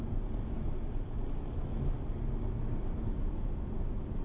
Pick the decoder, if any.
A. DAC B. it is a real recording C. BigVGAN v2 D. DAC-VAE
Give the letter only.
B